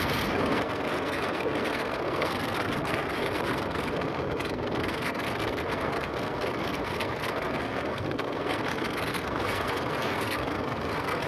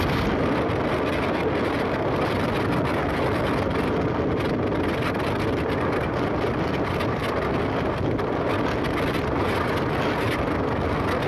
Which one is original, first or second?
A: second